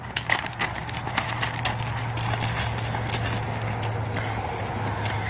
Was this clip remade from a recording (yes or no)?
no